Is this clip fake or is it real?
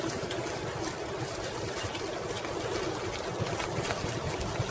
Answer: real